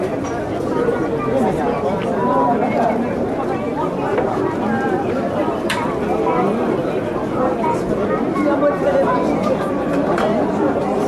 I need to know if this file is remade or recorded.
remade